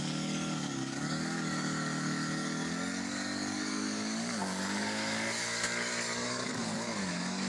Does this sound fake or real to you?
fake